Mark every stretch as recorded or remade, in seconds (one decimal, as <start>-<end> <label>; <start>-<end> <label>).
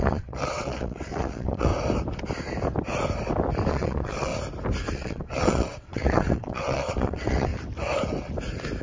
0.0-1.7 remade; 1.7-3.7 recorded; 3.7-4.3 remade; 4.3-4.9 recorded; 4.9-7.5 remade; 7.5-8.8 recorded